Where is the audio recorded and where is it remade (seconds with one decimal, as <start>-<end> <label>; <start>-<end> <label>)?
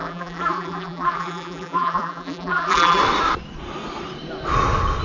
0.0-3.0 remade; 3.0-5.0 recorded